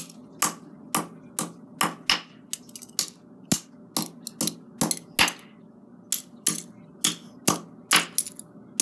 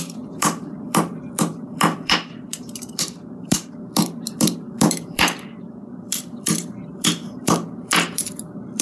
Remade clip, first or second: second